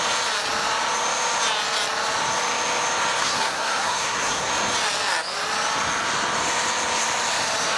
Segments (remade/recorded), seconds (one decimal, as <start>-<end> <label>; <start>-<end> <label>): 0.0-3.2 recorded; 3.2-4.5 remade; 4.5-7.8 recorded